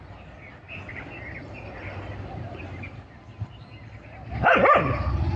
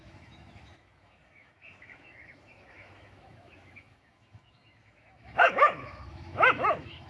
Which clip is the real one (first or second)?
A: first